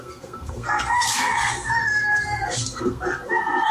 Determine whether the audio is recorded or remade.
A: remade